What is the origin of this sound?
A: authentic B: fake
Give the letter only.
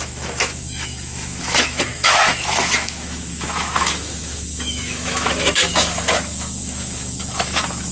B